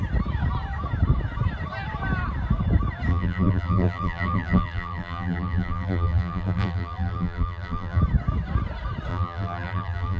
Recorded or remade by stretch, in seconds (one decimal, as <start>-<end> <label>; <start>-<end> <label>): 0.0-3.1 recorded; 3.1-8.0 remade; 8.0-9.1 recorded; 9.1-10.2 remade